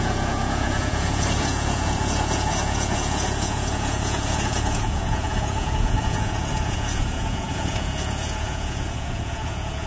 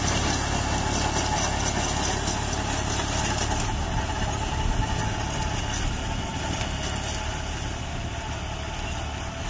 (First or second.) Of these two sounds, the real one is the second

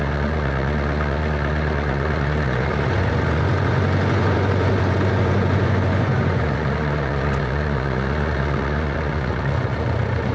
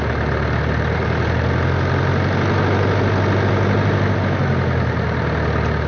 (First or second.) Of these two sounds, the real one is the second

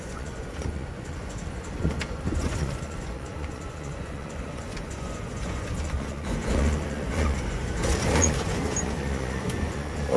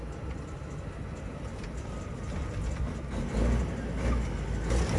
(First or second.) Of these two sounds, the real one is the second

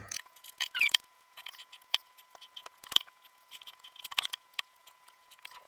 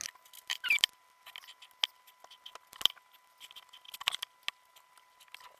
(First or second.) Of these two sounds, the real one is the second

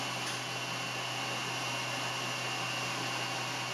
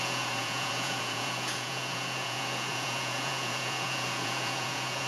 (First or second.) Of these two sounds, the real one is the first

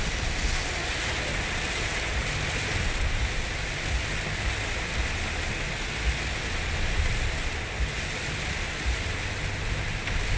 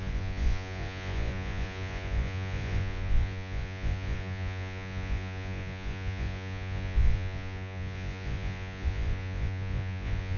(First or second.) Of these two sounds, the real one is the first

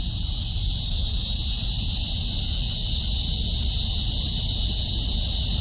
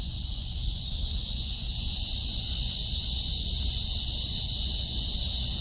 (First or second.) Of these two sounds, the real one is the first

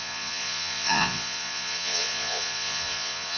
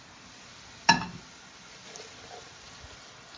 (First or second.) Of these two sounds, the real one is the second